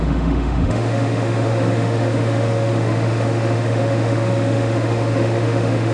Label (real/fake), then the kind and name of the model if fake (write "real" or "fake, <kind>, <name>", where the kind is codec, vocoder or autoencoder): fake, autoencoder, DAC-VAE